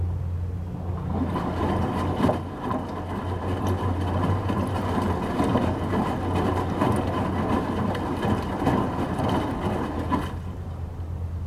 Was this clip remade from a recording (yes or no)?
no